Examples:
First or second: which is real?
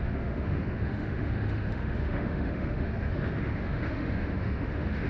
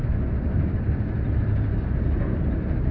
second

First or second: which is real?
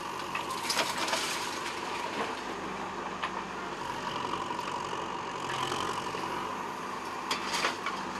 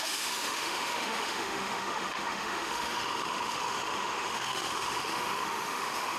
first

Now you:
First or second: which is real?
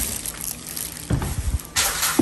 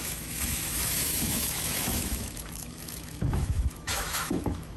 first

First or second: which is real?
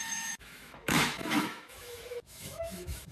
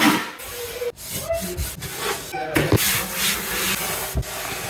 second